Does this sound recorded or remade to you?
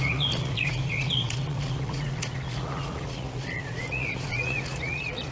remade